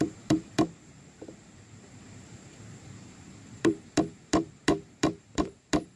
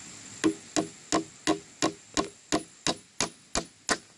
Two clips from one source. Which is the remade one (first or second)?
first